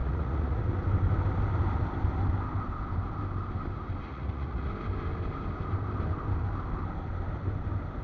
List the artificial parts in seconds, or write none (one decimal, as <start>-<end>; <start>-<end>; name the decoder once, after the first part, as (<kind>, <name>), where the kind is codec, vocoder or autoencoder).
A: 0.0-0.6 (vocoder, Vocos); 4.1-4.7